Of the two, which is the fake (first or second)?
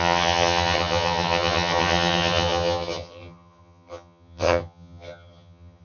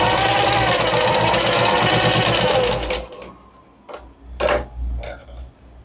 first